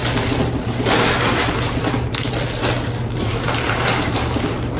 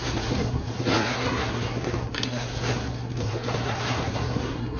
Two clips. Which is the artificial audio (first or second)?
second